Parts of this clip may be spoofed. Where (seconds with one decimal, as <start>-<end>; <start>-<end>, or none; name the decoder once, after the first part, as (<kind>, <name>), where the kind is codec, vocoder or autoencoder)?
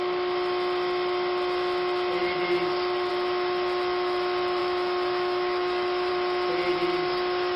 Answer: 4.6-6.1 (autoencoder, DAC-VAE)